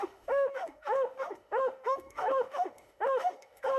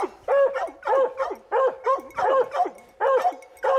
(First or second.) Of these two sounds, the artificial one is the first